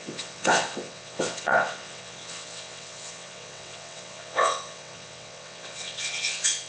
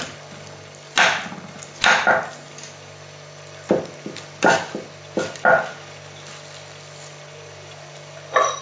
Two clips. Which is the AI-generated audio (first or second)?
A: first